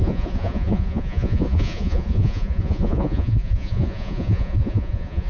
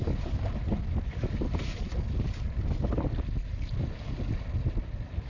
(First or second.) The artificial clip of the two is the first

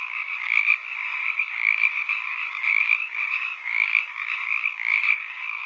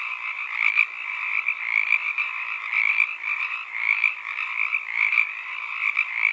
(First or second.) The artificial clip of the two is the first